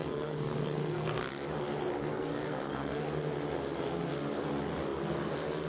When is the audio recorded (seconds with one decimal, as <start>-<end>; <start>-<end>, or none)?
1.2-2.1; 3.0-5.7